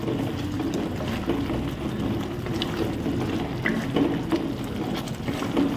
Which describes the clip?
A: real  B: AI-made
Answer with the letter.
A